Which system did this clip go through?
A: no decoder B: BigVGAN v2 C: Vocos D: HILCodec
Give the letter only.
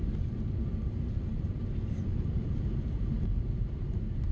B